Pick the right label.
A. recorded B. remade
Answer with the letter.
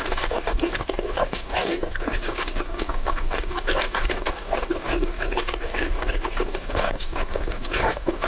B